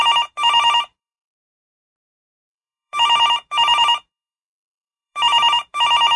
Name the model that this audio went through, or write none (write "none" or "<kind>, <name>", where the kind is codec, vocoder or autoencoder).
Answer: vocoder, BigVGAN v2